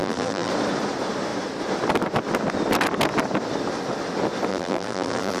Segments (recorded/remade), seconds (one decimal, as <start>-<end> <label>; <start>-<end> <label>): 0.0-0.5 remade; 0.5-4.5 recorded; 4.5-5.4 remade